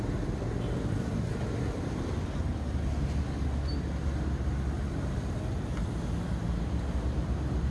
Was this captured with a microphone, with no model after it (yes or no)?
yes